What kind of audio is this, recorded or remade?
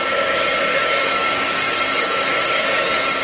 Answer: remade